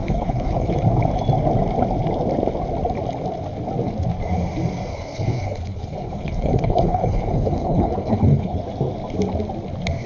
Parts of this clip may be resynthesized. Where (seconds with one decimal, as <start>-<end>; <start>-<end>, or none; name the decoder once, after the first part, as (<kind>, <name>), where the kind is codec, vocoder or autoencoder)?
0.0-0.7 (codec, HILCodec); 4.9-8.6